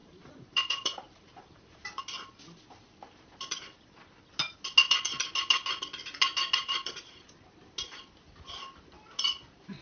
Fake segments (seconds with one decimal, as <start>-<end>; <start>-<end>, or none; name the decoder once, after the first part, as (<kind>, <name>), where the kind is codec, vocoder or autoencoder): 0.0-2.0 (vocoder, BigVGAN v2); 6.6-7.3